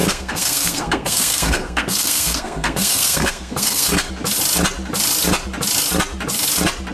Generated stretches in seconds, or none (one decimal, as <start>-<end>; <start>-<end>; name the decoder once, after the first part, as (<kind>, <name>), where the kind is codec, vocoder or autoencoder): 0.0-4.1 (codec, SNAC)